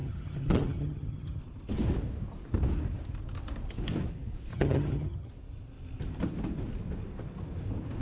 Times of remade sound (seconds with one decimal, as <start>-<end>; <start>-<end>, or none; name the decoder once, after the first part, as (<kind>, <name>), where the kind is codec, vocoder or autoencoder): 0.0-1.4 (vocoder, HiFi-GAN); 4.5-5.3